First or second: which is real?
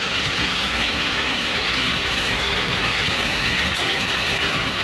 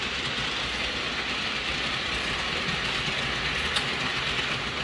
second